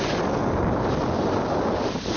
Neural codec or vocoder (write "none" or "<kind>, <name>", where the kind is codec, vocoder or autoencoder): none